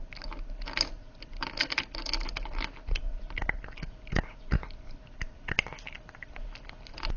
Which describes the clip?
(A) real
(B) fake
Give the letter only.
A